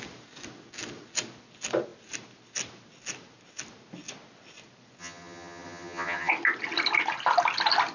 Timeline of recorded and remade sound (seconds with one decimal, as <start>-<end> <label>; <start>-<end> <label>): 0.0-5.0 recorded; 5.0-6.3 remade; 6.3-7.9 recorded

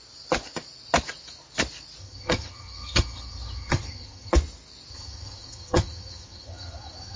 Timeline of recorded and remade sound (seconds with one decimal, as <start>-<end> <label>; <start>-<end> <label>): 0.0-2.0 recorded; 2.0-4.3 remade; 4.3-4.9 recorded; 4.9-7.2 remade

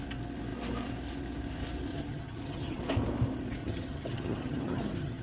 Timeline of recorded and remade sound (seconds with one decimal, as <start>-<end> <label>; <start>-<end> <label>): 0.0-1.9 recorded; 1.9-2.8 remade; 2.8-3.6 recorded; 3.6-5.2 remade

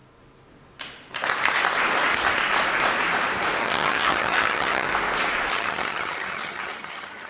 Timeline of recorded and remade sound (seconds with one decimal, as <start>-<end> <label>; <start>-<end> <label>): 0.0-3.6 recorded; 3.6-4.9 remade; 4.9-5.5 recorded; 5.5-7.3 remade